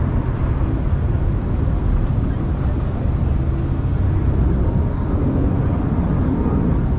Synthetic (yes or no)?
no